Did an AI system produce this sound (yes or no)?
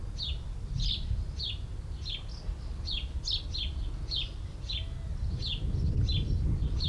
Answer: no